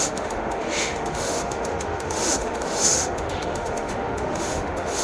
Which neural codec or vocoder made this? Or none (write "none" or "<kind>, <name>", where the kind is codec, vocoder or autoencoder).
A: autoencoder, DAC-VAE